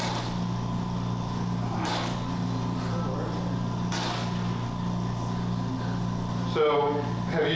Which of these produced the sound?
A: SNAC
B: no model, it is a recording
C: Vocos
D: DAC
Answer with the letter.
B